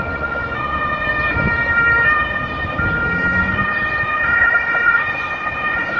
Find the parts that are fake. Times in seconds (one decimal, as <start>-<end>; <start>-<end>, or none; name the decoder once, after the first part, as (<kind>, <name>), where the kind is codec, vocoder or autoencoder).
0.0-1.1 (vocoder, Vocos); 3.9-6.0